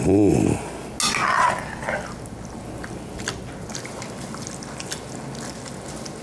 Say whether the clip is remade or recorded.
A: recorded